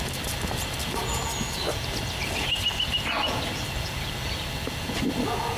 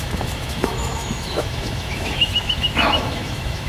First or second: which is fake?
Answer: second